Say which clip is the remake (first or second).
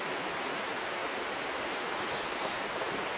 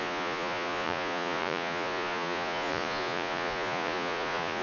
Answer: second